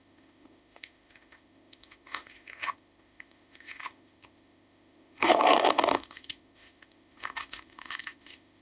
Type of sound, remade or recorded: remade